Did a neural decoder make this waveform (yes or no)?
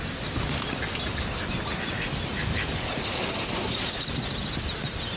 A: no